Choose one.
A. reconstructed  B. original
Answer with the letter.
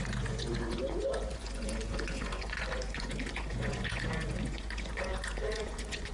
A